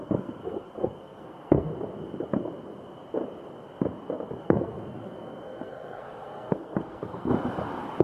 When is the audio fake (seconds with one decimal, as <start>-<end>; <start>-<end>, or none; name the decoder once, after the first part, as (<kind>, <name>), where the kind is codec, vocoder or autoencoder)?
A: 0.0-1.7 (codec, SNAC); 4.4-7.3